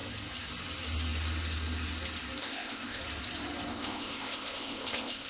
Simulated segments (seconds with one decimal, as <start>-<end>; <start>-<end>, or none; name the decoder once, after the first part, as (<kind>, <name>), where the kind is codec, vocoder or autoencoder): 2.4-3.0 (codec, ZipCodec); 3.7-5.3